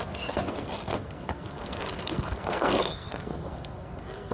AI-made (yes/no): yes